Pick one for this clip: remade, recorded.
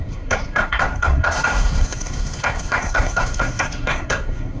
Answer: remade